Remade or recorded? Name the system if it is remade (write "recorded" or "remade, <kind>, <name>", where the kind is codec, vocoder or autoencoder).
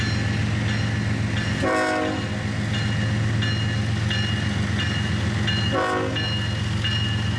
recorded